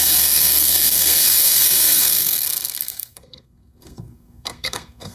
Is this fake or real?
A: fake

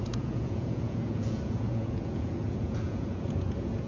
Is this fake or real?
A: fake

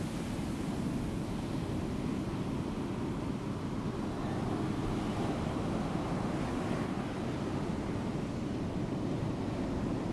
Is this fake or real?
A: real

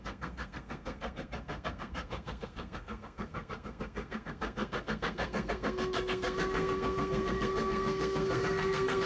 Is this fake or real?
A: fake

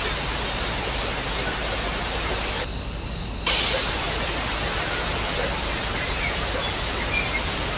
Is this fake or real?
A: real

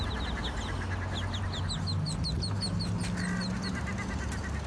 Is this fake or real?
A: real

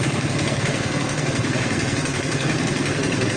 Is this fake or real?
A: fake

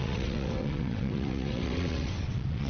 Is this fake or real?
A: fake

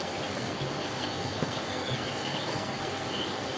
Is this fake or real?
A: fake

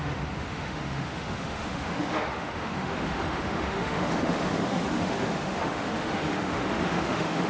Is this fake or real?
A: fake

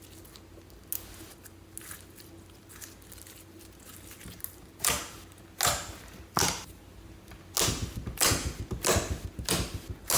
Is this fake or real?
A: real